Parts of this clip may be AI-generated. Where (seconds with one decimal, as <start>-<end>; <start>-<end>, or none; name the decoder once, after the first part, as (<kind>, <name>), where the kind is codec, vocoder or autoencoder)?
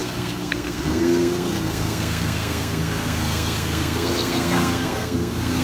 0.0-5.6 (codec, SNAC)